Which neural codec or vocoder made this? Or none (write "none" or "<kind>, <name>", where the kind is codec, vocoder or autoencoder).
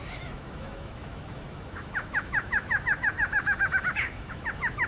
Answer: autoencoder, DAC-VAE